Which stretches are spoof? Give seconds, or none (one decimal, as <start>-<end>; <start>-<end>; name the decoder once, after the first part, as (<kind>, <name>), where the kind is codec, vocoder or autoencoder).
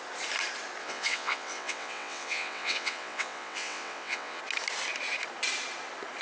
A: 0.8-4.4 (vocoder, WaveNeXt)